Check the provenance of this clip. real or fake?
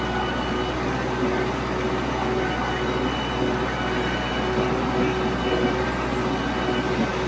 real